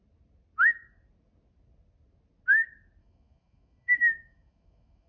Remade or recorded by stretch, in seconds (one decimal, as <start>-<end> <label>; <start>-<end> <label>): 0.0-3.0 recorded; 3.0-5.1 remade